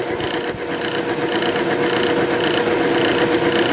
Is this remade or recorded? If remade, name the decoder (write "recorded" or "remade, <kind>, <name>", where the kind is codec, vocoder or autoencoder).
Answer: recorded